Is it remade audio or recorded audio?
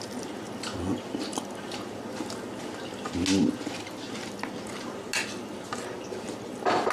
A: recorded